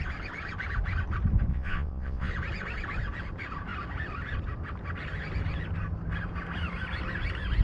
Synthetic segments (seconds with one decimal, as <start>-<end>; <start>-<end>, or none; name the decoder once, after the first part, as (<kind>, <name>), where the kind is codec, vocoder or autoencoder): 1.5-2.3 (vocoder, Vocos)